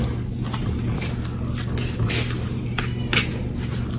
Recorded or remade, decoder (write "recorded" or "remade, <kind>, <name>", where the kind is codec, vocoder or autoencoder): recorded